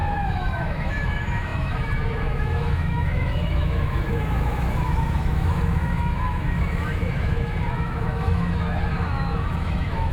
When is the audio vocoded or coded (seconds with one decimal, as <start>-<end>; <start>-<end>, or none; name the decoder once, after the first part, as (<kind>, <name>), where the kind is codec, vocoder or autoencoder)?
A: 0.0-10.1 (autoencoder, DAC-VAE)